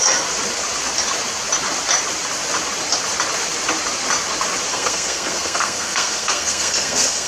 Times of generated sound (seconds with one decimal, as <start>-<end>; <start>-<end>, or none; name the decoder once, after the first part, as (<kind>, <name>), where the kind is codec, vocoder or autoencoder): 4.7-7.3 (codec, SNAC)

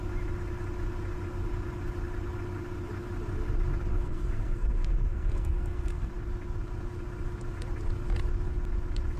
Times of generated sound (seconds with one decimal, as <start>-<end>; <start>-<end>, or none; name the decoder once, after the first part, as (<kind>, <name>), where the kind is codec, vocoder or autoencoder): 3.9-6.1 (codec, SNAC)

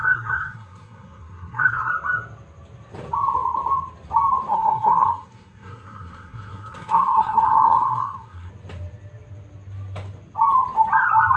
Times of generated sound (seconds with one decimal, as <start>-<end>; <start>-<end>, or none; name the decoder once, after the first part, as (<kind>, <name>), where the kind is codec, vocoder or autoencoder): 0.0-1.9 (codec, SNAC); 4.5-8.5

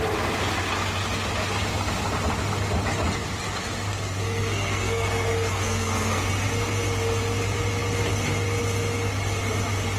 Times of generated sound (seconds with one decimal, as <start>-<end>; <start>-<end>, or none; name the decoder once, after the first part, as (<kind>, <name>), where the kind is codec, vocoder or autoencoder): 3.9-6.3 (codec, SNAC)

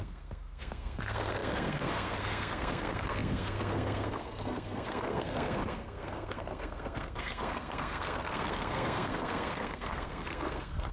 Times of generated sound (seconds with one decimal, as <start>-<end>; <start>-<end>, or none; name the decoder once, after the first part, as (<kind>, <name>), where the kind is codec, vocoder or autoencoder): 0.0-10.9 (codec, SNAC)

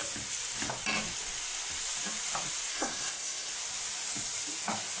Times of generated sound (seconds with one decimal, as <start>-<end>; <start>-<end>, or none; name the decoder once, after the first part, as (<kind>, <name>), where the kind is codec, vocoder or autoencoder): 2.7-3.5 (codec, SNAC)